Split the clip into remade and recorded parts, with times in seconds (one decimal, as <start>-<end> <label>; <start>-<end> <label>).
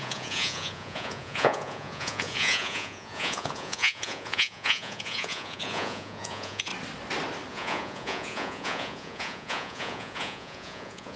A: 0.0-6.7 remade; 6.7-7.5 recorded; 7.5-11.2 remade